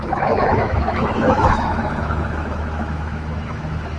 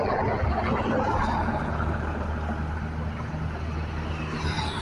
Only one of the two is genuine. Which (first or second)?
second